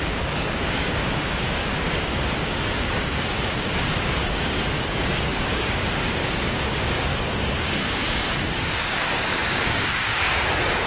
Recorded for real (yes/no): no